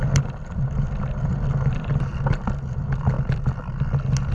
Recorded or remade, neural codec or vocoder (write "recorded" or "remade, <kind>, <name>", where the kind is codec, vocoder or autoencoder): recorded